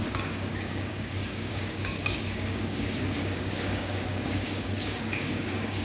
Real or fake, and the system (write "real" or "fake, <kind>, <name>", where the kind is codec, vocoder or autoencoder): fake, codec, DAC